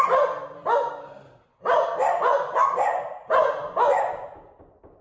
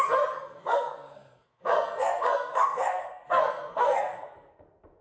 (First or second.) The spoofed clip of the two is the second